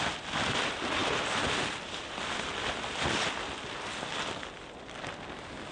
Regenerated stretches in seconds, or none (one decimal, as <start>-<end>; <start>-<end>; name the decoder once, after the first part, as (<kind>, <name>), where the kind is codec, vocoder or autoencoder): none